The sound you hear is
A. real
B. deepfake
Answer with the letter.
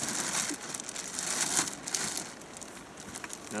A